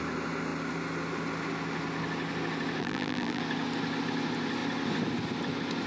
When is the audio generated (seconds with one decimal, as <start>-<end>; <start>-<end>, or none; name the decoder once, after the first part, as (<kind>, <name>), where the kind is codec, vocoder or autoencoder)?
2.8-3.4 (vocoder, BigVGAN v2)